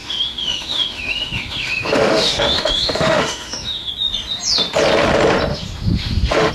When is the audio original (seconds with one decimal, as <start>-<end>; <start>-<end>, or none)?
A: 3.9-5.5